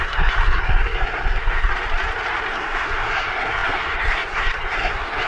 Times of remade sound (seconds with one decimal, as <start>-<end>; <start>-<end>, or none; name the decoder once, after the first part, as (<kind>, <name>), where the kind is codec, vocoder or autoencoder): 0.0-1.7 (codec, SNAC); 2.5-5.3